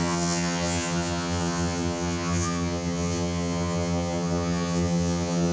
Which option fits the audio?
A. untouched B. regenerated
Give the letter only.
B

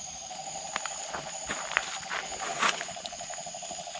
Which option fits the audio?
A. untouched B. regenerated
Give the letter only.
A